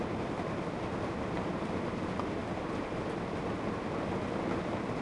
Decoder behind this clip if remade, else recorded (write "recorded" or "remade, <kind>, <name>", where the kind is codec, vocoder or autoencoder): recorded